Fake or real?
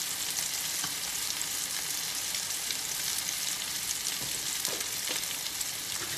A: real